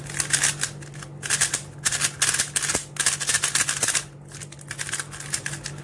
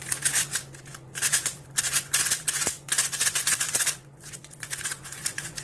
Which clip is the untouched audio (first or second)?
first